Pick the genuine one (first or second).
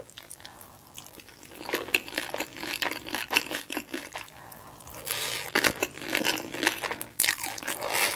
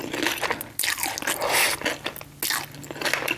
second